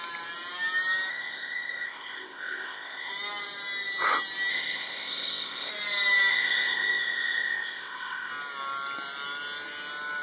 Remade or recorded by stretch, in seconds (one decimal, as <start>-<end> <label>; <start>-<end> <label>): 0.0-1.1 recorded; 1.1-3.1 remade; 3.1-4.5 recorded; 4.5-5.7 remade; 5.7-6.3 recorded; 6.3-8.3 remade; 8.3-10.2 recorded

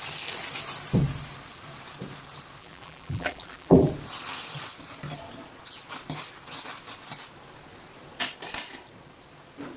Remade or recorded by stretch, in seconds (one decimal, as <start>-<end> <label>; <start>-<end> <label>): 0.0-2.6 recorded; 2.6-3.9 remade; 3.9-9.8 recorded